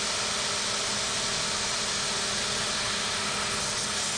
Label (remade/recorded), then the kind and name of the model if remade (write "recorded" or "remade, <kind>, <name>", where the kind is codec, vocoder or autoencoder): recorded